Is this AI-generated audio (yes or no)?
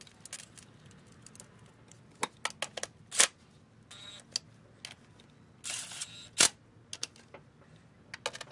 no